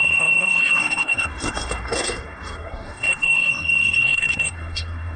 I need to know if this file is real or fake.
fake